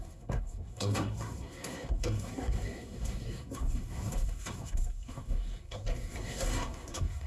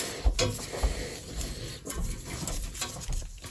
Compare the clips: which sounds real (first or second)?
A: second